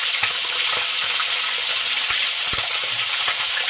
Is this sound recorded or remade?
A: recorded